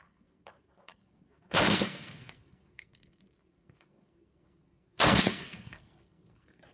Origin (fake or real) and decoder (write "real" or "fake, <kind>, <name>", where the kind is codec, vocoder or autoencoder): fake, codec, SNAC